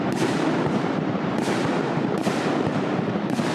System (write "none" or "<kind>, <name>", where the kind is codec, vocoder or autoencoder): vocoder, BigVGAN v2